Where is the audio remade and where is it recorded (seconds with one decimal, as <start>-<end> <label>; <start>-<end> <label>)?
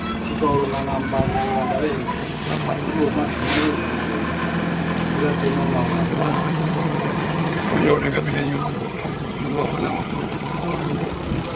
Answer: 0.0-2.2 recorded; 2.2-2.9 remade; 2.9-6.1 recorded; 6.1-11.1 remade; 11.1-11.6 recorded